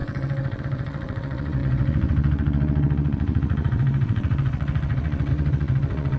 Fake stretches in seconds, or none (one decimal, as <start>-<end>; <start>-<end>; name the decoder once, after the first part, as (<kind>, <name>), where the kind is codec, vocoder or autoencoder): 0.0-6.2 (vocoder, WaveNeXt)